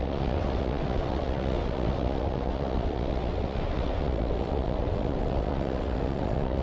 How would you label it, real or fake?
fake